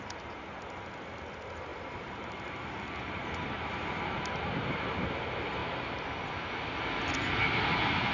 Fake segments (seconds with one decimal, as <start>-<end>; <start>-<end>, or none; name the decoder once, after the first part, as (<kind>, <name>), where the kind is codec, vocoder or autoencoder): 1.7-5.0 (vocoder, BigVGAN v2)